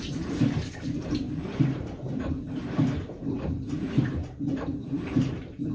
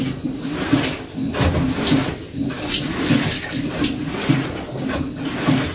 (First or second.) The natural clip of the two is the second